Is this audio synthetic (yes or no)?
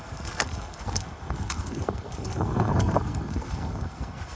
yes